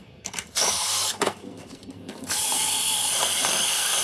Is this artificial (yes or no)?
yes